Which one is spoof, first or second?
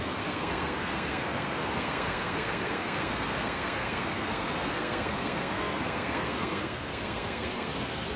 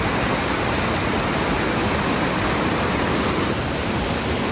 first